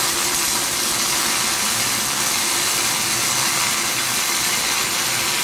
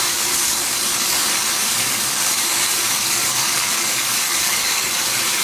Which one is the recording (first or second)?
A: first